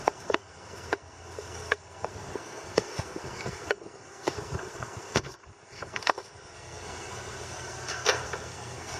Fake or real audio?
fake